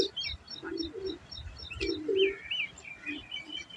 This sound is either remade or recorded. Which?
recorded